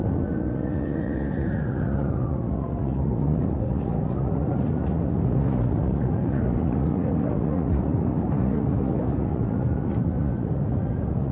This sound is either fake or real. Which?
fake